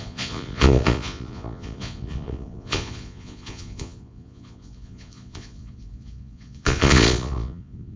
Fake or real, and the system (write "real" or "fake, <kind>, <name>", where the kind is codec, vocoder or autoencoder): fake, vocoder, Vocos